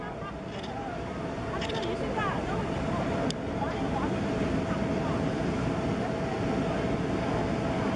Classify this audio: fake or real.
real